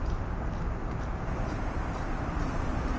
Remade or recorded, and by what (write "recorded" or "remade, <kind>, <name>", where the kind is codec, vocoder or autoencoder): recorded